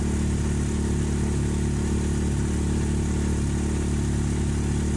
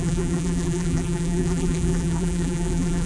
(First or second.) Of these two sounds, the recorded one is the first